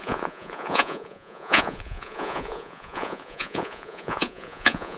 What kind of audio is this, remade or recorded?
remade